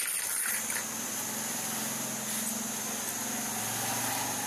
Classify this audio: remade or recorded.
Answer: recorded